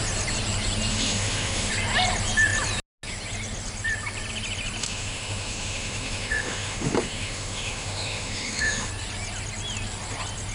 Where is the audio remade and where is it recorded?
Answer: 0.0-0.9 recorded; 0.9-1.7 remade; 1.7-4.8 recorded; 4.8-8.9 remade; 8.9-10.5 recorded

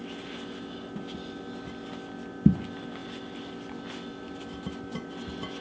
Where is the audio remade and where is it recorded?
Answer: 0.0-5.6 recorded

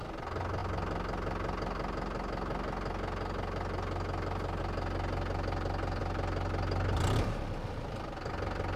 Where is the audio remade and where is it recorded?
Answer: 0.0-8.8 recorded

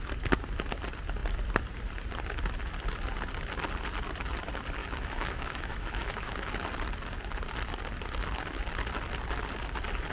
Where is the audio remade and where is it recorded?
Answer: 0.0-4.8 recorded; 4.8-6.5 remade; 6.5-10.1 recorded

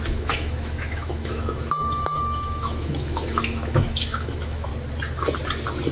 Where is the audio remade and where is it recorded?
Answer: 0.0-4.7 remade; 4.7-5.9 recorded

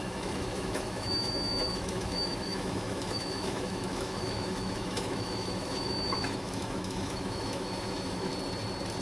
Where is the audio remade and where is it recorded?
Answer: 0.0-8.3 remade; 8.3-9.0 recorded

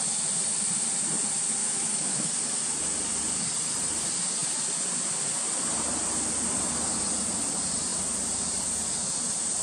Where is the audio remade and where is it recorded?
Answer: 0.0-1.6 recorded; 1.6-2.3 remade; 2.3-9.6 recorded